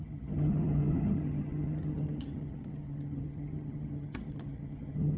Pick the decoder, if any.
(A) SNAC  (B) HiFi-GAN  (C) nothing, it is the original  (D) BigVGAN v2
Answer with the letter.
B